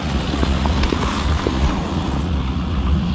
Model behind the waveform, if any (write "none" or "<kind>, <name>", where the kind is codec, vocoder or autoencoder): vocoder, Vocos